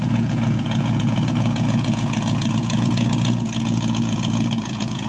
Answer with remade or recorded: remade